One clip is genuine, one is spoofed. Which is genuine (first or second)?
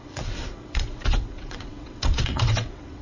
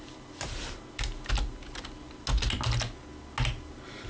second